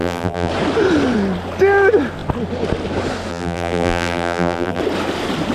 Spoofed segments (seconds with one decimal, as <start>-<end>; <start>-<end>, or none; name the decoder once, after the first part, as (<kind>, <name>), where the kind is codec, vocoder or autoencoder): 0.0-0.5 (vocoder, BigVGAN v2); 3.3-4.8